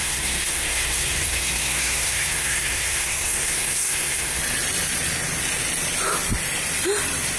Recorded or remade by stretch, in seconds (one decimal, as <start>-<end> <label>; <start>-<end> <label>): 0.0-4.4 remade; 4.4-7.4 recorded